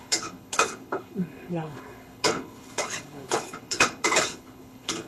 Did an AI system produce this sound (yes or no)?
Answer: yes